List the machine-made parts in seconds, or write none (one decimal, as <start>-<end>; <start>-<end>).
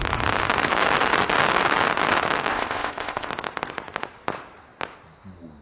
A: 2.5-3.3